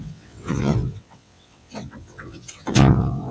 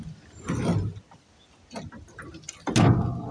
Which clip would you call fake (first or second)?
first